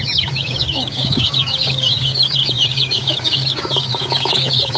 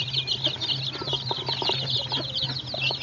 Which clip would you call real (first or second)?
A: second